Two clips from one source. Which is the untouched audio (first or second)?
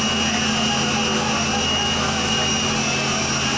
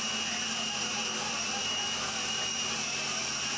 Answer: first